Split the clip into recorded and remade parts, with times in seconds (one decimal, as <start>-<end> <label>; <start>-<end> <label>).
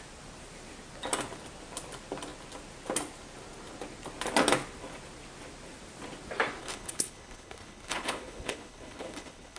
0.0-6.6 recorded; 6.6-9.6 remade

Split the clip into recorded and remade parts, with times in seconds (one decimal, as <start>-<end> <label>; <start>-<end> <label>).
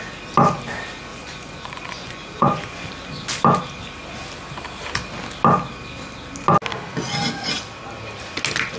0.0-1.1 recorded; 1.1-2.9 remade; 2.9-8.8 recorded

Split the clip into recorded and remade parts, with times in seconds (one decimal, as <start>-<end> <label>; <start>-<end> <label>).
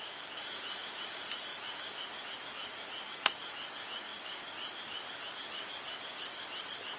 0.0-2.6 recorded; 2.6-3.4 remade; 3.4-7.0 recorded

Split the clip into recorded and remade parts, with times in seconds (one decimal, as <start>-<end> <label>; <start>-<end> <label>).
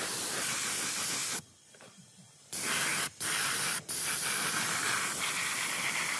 0.0-2.9 remade; 2.9-6.2 recorded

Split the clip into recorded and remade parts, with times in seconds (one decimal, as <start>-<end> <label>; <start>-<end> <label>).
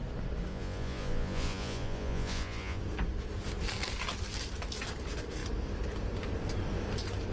0.0-0.5 recorded; 0.5-2.8 remade; 2.8-7.3 recorded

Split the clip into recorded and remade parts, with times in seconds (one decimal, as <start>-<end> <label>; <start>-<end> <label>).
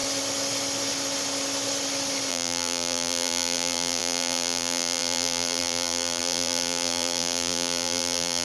0.0-2.3 recorded; 2.3-8.4 remade